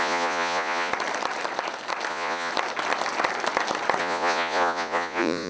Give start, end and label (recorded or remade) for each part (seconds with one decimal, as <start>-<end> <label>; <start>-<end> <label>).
0.0-0.9 remade; 0.9-2.1 recorded; 2.1-2.5 remade; 2.5-4.0 recorded; 4.0-5.5 remade